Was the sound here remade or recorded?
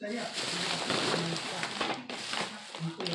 recorded